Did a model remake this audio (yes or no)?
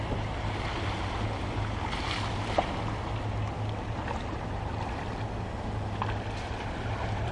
no